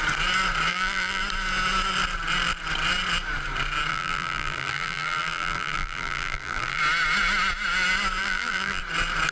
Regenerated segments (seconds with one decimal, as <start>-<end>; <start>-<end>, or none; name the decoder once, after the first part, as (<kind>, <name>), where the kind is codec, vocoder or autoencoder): 0.7-1.2 (vocoder, BigVGAN v2); 3.9-6.8; 8.2-8.8